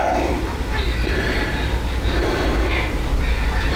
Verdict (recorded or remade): remade